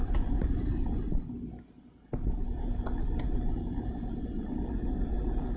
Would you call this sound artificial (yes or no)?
no